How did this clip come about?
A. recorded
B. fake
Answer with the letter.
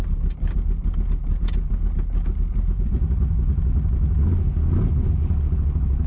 A